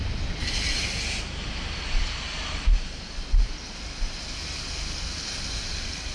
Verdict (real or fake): real